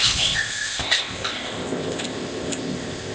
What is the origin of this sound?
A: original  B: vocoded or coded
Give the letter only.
B